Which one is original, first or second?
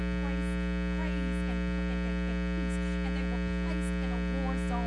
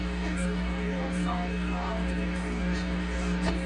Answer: first